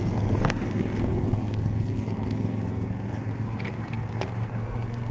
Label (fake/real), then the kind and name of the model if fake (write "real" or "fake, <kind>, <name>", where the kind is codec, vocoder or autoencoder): fake, codec, SNAC